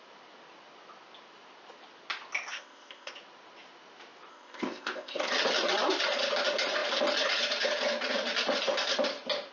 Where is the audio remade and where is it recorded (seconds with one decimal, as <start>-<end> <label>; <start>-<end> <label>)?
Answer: 0.0-2.5 recorded; 2.5-3.1 remade; 3.1-4.3 recorded; 4.3-5.3 remade; 5.3-9.5 recorded